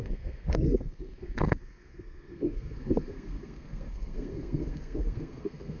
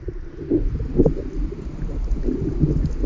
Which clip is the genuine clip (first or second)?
second